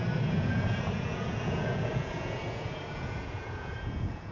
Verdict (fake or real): fake